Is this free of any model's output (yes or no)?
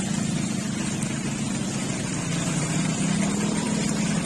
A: yes